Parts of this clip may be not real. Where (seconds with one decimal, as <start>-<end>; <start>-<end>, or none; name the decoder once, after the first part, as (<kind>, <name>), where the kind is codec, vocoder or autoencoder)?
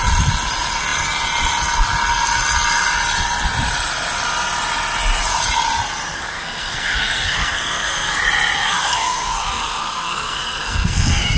6.1-8.2 (codec, SNAC); 8.6-11.4